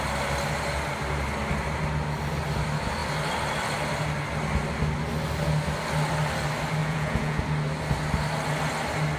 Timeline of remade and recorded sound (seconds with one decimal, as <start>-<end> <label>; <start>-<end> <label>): 0.0-6.8 recorded; 6.8-7.4 remade; 7.4-9.2 recorded